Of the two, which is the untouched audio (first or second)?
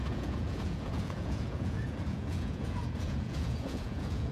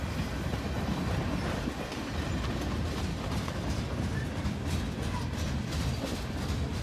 second